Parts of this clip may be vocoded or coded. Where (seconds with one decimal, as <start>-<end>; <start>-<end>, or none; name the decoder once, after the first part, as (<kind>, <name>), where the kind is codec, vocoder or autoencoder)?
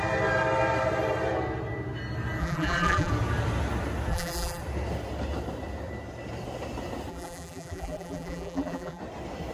2.4-3.1 (vocoder, BigVGAN v2); 4.1-4.6; 7.1-9.0